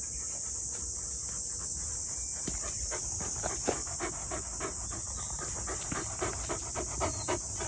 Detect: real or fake real